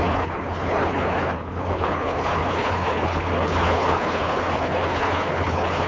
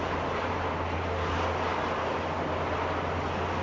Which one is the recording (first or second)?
second